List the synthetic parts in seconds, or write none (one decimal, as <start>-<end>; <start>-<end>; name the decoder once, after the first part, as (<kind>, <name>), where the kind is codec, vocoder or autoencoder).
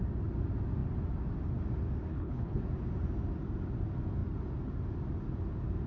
2.1-2.6 (codec, HILCodec)